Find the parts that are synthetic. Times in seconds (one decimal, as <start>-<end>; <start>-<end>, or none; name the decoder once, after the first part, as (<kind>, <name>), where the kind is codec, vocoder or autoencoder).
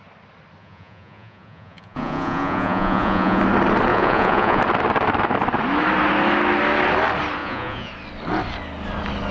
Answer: 0.6-3.4 (vocoder, Vocos); 3.9-4.6; 7.4-7.9